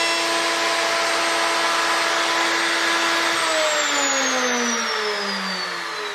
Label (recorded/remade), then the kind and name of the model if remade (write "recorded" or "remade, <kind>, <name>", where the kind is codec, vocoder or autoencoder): recorded